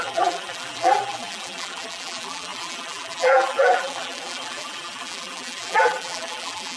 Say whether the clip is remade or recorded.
remade